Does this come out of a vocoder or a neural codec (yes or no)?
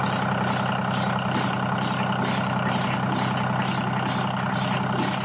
no